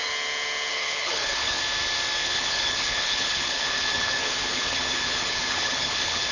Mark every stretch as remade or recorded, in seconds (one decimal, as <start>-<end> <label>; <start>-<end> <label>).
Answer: 0.0-0.7 recorded; 0.7-1.6 remade; 1.6-2.2 recorded; 2.2-6.3 remade